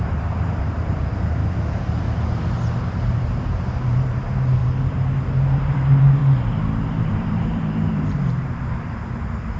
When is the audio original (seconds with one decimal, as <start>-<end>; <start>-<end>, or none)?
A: 1.4-3.2; 6.2-7.0